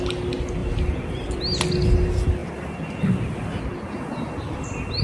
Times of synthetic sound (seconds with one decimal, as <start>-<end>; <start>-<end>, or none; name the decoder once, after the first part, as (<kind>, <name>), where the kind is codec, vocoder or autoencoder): 0.6-1.4 (vocoder, BigVGAN v2); 2.4-3.7